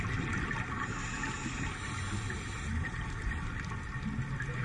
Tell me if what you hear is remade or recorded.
recorded